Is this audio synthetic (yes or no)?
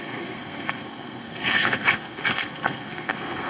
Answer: yes